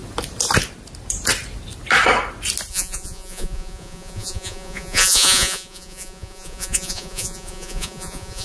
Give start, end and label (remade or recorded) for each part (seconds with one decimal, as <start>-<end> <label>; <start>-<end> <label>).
0.0-2.7 recorded; 2.7-8.4 remade